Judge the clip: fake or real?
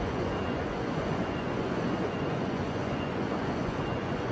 fake